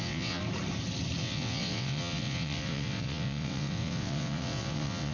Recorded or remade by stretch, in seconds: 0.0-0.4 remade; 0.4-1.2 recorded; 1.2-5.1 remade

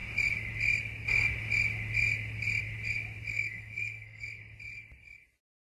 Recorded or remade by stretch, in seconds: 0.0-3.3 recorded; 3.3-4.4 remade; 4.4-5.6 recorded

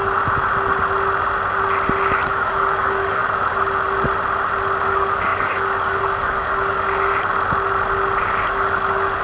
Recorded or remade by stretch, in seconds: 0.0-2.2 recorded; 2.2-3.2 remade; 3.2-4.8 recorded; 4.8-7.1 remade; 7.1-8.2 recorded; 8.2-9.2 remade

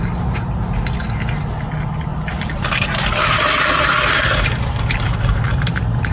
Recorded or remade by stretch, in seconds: 0.0-2.1 recorded; 2.1-6.1 remade

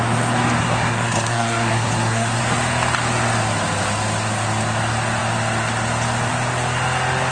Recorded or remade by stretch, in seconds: 0.0-0.6 recorded; 0.6-2.4 remade; 2.4-7.3 recorded

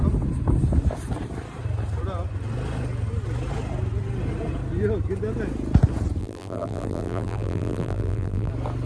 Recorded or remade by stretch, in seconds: 0.0-6.2 recorded; 6.2-8.5 remade; 8.5-8.9 recorded

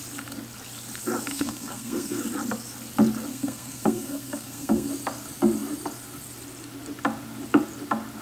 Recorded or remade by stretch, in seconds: 0.0-1.3 recorded; 1.3-2.2 remade; 2.2-3.3 recorded; 3.3-4.9 remade; 4.9-8.2 recorded

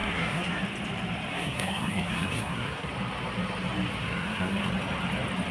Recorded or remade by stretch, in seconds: 0.0-0.5 remade; 0.5-1.3 recorded; 1.3-2.9 remade; 2.9-4.0 recorded; 4.0-4.7 remade; 4.7-5.5 recorded